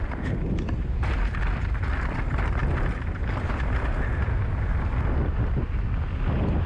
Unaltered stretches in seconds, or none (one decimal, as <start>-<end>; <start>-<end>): 0.0-6.7